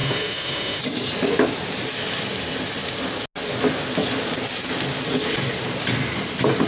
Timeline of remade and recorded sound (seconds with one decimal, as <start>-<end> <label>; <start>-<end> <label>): 0.0-0.8 remade; 0.8-6.7 recorded